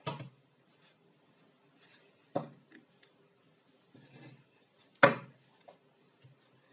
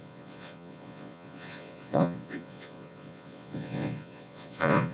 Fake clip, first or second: second